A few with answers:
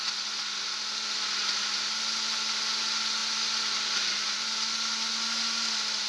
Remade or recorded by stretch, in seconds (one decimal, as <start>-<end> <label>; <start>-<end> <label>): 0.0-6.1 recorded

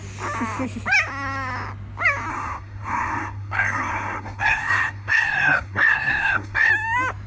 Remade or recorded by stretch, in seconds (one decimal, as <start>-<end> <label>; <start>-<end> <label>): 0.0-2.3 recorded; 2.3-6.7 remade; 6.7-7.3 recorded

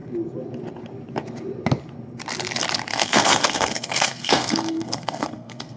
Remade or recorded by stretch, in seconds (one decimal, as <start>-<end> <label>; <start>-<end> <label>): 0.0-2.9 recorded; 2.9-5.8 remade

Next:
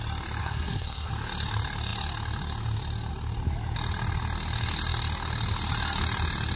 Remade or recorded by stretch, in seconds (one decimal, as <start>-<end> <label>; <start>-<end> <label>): 0.0-0.4 recorded; 0.4-1.1 remade; 1.1-6.6 recorded

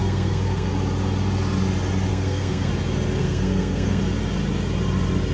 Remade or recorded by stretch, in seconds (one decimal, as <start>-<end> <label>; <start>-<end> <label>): 0.0-0.7 remade; 0.7-2.1 recorded; 2.1-2.7 remade; 2.7-3.2 recorded; 3.2-4.0 remade; 4.0-5.3 recorded